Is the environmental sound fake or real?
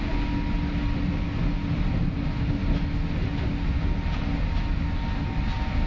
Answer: real